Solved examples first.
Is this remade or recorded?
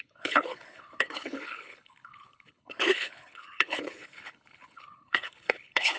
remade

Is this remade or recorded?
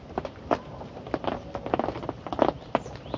recorded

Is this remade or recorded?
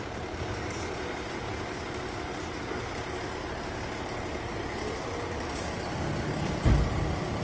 recorded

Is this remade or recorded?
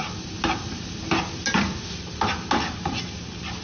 recorded